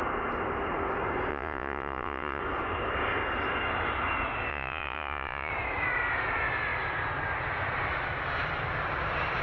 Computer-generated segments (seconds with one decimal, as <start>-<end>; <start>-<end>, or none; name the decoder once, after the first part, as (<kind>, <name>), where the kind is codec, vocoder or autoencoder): 1.3-2.4 (vocoder, Vocos); 4.5-5.5